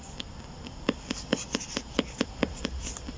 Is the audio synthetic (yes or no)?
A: no